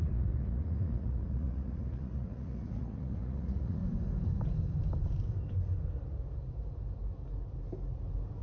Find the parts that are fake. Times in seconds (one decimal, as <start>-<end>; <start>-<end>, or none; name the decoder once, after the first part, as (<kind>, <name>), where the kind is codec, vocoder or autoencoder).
0.0-3.8 (vocoder, Vocos)